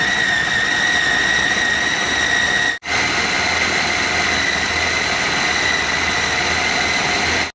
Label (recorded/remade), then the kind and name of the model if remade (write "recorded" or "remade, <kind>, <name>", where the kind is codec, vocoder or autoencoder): recorded